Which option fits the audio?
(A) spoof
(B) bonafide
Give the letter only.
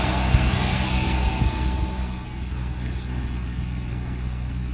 A